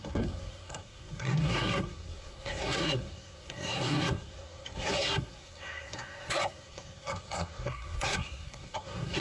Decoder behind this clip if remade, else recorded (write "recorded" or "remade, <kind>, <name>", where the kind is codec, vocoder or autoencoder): remade, codec, SNAC